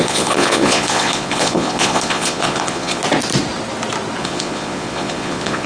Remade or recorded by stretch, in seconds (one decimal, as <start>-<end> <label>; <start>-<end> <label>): 0.0-3.0 remade; 3.0-4.2 recorded; 4.2-5.7 remade